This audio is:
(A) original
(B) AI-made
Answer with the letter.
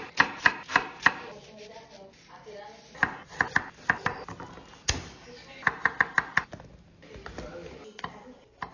A